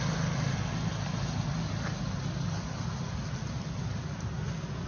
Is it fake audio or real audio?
real